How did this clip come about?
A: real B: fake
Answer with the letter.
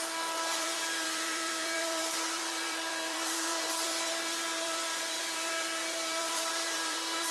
B